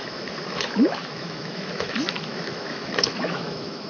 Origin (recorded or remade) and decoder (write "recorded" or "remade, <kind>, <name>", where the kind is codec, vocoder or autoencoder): remade, autoencoder, DAC-VAE